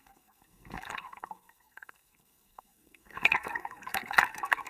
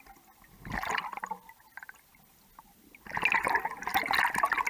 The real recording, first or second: second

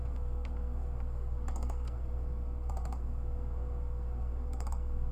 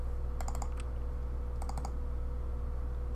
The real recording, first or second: second